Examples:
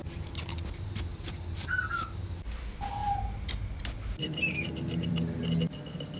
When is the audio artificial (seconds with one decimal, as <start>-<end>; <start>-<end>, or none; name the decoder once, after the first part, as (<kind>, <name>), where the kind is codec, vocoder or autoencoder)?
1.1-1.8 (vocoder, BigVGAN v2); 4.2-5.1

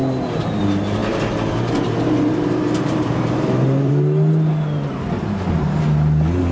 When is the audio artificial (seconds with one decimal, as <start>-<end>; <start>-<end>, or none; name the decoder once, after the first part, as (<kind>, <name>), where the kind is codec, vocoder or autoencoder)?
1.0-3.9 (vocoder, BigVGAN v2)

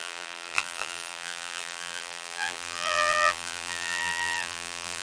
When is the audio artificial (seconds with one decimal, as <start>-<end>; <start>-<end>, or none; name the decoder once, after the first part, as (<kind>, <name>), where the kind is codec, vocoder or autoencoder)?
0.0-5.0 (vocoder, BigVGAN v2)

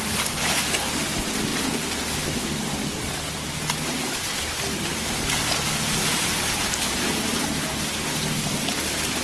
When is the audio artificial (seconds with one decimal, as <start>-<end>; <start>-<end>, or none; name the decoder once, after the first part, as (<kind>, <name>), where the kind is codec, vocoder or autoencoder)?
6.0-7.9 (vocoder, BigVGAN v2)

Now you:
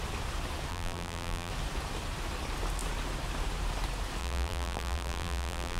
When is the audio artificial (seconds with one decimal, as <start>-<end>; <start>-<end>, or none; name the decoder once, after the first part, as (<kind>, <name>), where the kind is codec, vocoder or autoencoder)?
0.7-1.5 (vocoder, BigVGAN v2); 4.2-5.8

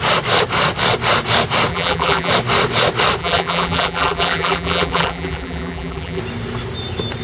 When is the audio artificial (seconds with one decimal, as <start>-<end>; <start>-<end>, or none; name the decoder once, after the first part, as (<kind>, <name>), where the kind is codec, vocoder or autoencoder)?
1.7-2.3 (vocoder, BigVGAN v2); 3.2-6.2

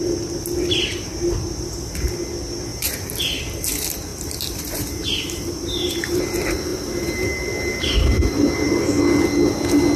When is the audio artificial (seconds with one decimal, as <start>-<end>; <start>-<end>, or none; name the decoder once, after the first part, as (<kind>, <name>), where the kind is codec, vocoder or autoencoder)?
2.7-3.4 (vocoder, BigVGAN v2); 4.1-6.2; 6.7-9.0

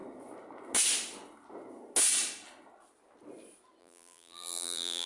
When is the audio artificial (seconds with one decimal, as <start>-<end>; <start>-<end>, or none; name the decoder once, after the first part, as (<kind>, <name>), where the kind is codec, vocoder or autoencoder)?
3.8-5.1 (vocoder, BigVGAN v2)